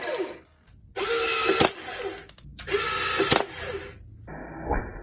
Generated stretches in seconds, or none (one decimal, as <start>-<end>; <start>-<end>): none